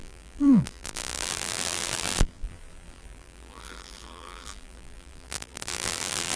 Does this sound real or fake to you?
fake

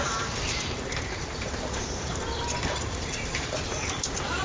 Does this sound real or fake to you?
fake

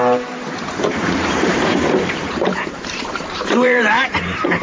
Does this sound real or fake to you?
fake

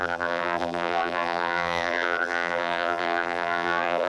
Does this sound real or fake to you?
fake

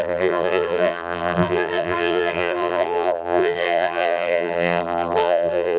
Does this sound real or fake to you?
fake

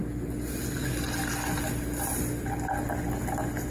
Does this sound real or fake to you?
real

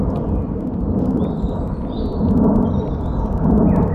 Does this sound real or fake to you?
real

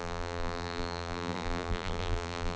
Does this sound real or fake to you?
fake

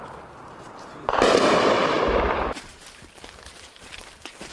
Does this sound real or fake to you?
fake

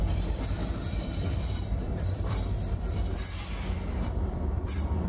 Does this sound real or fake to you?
fake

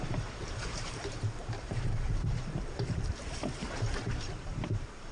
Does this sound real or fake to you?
fake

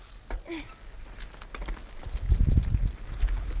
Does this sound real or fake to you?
real